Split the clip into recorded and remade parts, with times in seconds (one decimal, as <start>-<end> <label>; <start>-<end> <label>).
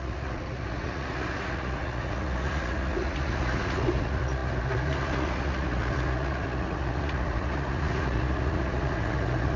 0.0-9.6 remade